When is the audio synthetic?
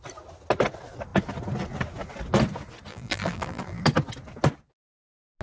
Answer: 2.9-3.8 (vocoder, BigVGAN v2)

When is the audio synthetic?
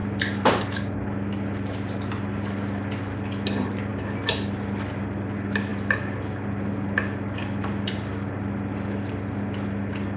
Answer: 0.0-0.6 (vocoder, BigVGAN v2)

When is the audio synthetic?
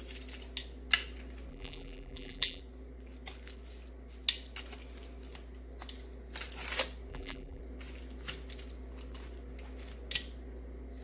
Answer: 1.5-2.6 (vocoder, BigVGAN v2); 7.1-7.6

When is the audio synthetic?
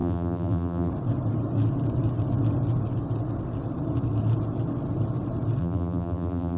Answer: 0.0-0.9 (vocoder, BigVGAN v2); 5.6-6.6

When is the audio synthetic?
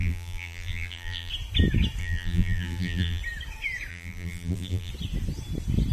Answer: 0.0-1.3 (vocoder, BigVGAN v2); 2.0-3.2; 3.9-4.9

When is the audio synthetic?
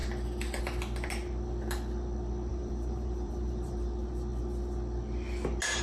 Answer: 2.5-3.9 (vocoder, BigVGAN v2)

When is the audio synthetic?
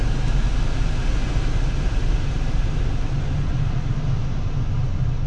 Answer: 1.0-2.4 (vocoder, BigVGAN v2)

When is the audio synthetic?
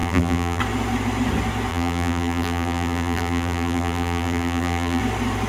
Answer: 0.0-0.6 (vocoder, BigVGAN v2); 1.7-5.0